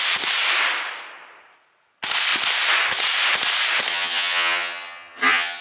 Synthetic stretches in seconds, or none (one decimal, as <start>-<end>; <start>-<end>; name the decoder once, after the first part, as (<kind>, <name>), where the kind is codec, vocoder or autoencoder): 3.9-5.6 (vocoder, HiFi-GAN)